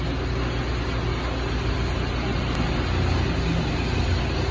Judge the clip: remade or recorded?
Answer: recorded